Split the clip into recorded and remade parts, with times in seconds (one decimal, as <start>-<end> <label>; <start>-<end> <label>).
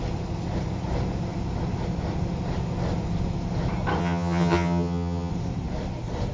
0.0-4.0 recorded; 4.0-5.3 remade; 5.3-6.3 recorded